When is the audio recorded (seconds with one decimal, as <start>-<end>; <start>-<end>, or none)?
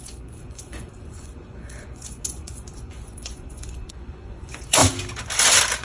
4.8-5.8